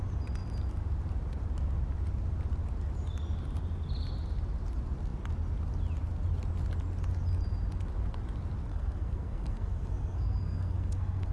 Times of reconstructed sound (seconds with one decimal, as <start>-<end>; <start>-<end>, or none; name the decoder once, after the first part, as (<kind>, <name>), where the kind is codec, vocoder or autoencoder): 8.7-11.3 (codec, SNAC)